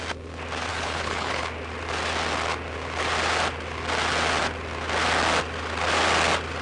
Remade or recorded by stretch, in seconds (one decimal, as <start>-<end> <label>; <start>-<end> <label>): 0.0-0.7 recorded; 0.7-1.4 remade; 1.4-6.6 recorded